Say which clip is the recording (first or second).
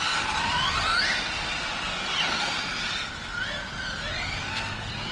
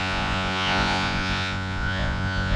first